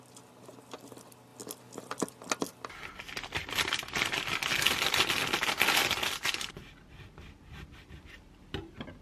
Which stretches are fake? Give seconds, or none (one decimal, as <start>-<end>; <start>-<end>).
none